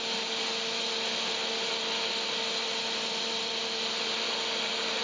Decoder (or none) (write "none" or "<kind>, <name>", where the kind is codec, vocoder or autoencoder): none